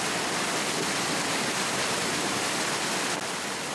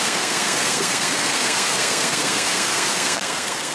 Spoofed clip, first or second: second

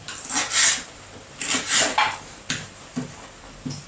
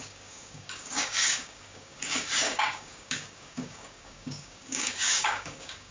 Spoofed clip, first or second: second